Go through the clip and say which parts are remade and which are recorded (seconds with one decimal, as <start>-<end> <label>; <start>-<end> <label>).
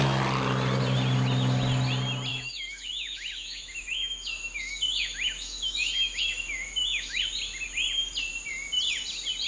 0.0-2.3 recorded; 2.3-7.2 remade; 7.2-9.5 recorded